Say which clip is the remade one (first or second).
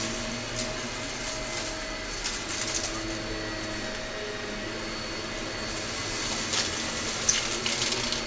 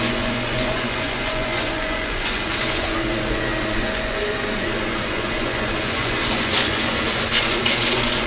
second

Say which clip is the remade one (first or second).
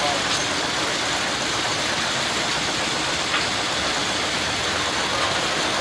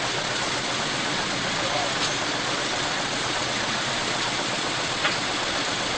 second